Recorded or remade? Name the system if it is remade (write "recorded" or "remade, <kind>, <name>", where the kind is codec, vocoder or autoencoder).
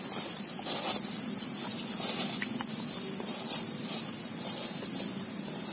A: recorded